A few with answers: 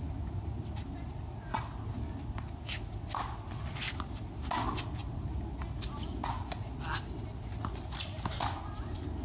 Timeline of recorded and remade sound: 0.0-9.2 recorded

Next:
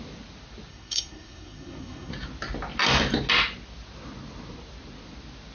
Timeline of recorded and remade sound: 0.0-0.7 recorded; 0.7-2.1 remade; 2.1-5.5 recorded